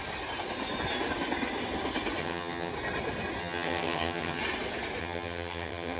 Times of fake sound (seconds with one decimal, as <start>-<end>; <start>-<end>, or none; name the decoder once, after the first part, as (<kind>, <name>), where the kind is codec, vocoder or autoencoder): 2.2-2.7 (vocoder, HiFi-GAN); 3.4-4.4; 5.0-6.0